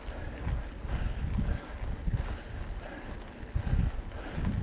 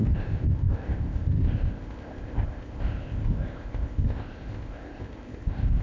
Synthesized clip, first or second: second